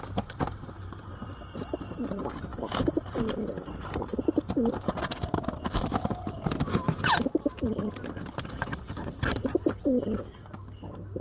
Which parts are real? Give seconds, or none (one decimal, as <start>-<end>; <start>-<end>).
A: 9.8-11.2